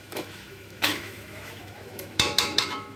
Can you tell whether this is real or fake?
fake